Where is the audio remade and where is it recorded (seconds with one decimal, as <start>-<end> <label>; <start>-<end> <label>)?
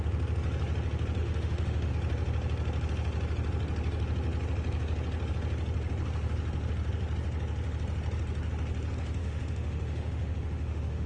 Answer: 0.0-1.2 recorded; 1.2-1.9 remade; 1.9-9.2 recorded; 9.2-11.1 remade